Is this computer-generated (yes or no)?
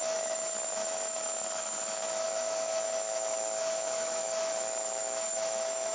yes